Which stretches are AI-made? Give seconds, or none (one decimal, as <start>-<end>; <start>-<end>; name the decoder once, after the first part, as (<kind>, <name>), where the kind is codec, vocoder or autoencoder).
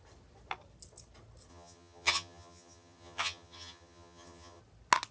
1.5-4.6 (vocoder, HiFi-GAN)